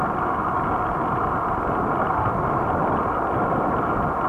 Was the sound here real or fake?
real